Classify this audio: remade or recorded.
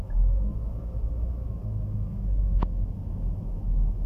remade